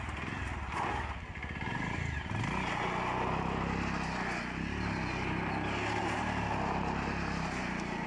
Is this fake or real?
real